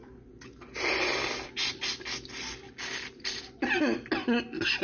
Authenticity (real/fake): real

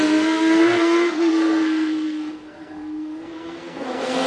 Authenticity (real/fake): fake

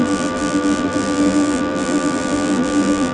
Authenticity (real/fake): fake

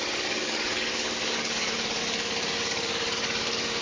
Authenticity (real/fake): fake